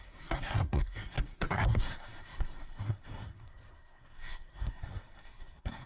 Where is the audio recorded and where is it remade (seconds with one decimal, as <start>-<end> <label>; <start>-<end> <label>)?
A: 0.0-5.9 remade

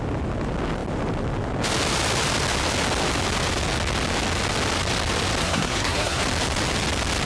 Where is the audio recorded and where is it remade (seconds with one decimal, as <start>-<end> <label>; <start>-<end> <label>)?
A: 0.0-5.4 recorded; 5.4-6.2 remade; 6.2-7.2 recorded

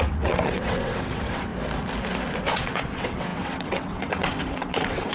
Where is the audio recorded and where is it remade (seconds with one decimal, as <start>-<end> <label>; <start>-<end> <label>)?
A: 0.0-1.5 remade; 1.5-2.5 recorded; 2.5-5.1 remade